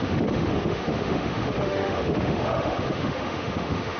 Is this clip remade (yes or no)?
yes